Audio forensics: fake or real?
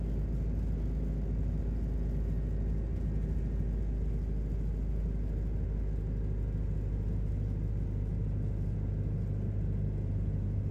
real